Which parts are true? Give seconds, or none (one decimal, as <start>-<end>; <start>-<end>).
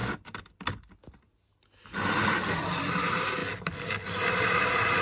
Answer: 0.0-5.0